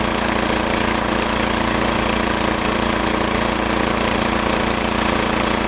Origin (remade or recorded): recorded